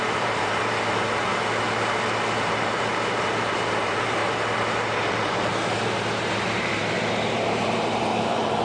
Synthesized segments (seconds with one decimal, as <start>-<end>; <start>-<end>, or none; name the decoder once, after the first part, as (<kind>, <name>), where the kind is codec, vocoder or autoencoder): 0.0-1.3 (vocoder, BigVGAN v2); 2.4-4.2; 5.1-8.6